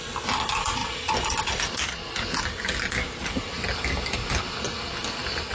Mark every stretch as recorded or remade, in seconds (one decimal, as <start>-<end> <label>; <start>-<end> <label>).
0.0-5.5 recorded